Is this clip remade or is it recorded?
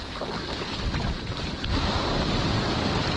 recorded